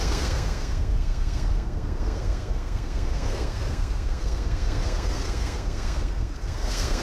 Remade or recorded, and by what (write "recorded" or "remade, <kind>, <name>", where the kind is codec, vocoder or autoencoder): remade, codec, SNAC